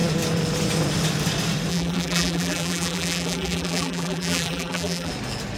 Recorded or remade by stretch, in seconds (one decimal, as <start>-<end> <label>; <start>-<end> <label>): 0.0-1.7 recorded; 1.7-5.1 remade; 5.1-5.6 recorded